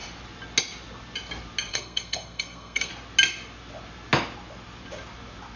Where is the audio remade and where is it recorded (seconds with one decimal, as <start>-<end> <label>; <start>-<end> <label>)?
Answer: 0.0-1.7 recorded; 1.7-2.9 remade; 2.9-5.6 recorded